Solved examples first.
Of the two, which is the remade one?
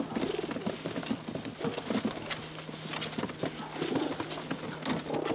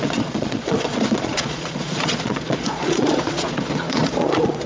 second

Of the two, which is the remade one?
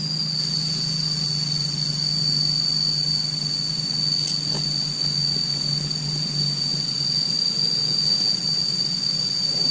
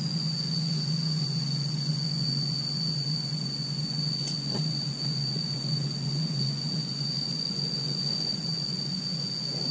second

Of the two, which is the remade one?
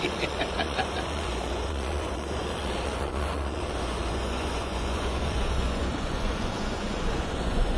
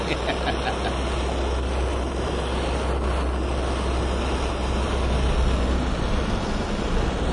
first